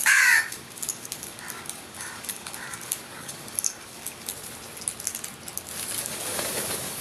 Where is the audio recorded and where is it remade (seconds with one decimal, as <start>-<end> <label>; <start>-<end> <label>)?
0.0-4.3 remade; 4.3-6.0 recorded; 6.0-7.0 remade